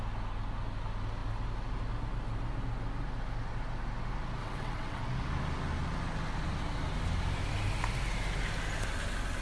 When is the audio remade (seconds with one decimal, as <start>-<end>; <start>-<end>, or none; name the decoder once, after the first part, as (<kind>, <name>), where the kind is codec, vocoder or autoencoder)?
4.4-5.0 (vocoder, WaveNeXt)